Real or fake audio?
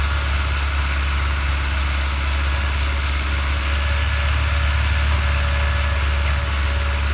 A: real